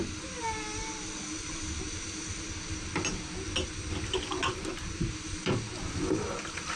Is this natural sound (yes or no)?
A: yes